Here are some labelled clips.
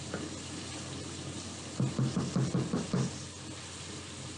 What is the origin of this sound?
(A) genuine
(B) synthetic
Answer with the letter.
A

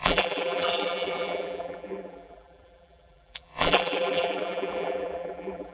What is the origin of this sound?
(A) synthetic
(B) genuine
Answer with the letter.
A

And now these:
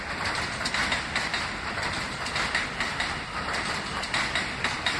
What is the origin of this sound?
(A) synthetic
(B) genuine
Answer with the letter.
A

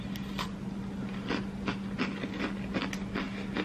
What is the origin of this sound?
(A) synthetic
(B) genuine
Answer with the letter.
B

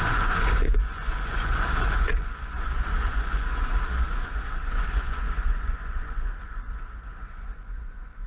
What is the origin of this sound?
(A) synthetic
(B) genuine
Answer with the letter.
A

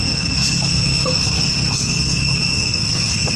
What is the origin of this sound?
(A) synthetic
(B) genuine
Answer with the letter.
A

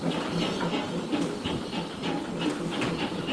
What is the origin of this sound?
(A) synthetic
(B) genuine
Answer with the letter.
B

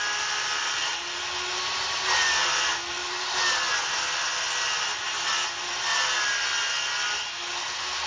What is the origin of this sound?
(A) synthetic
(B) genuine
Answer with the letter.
B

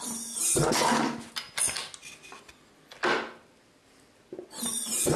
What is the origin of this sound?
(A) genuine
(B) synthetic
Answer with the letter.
A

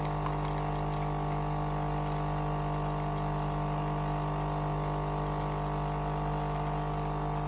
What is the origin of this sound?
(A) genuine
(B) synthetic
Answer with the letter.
A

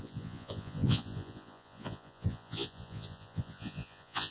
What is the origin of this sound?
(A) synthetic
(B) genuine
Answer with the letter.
A